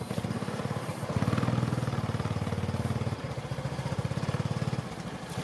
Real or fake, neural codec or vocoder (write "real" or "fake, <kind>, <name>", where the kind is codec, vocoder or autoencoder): fake, vocoder, BigVGAN v2